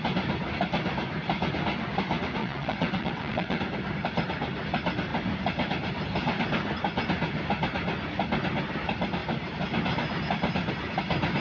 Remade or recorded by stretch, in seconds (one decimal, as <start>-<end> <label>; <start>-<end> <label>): 0.0-2.4 recorded; 2.4-3.6 remade; 3.6-11.4 recorded